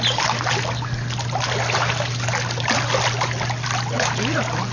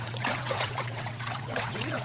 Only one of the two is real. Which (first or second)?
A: first